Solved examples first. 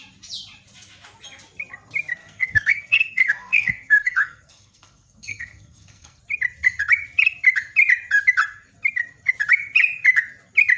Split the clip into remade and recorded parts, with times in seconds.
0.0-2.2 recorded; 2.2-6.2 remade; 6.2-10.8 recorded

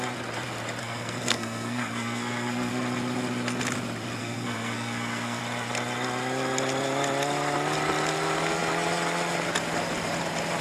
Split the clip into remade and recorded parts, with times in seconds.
0.0-0.8 recorded; 0.8-2.7 remade; 2.7-4.2 recorded; 4.2-5.4 remade; 5.4-10.6 recorded

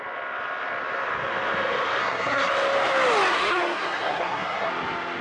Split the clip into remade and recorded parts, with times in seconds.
0.0-2.0 recorded; 2.0-2.5 remade; 2.5-3.3 recorded; 3.3-4.7 remade; 4.7-5.2 recorded

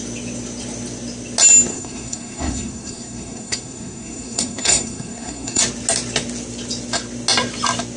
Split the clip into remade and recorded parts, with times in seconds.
0.0-1.7 recorded; 1.7-5.6 remade; 5.6-8.0 recorded

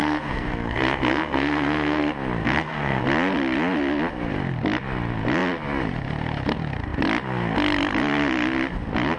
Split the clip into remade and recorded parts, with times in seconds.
0.0-2.0 remade; 2.0-2.4 recorded; 2.4-3.0 remade; 3.0-9.2 recorded

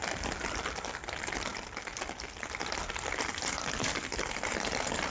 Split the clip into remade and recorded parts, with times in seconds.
0.0-5.1 recorded

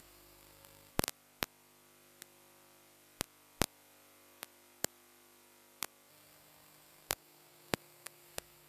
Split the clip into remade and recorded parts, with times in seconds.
0.0-0.9 remade; 0.9-6.1 recorded; 6.1-8.7 remade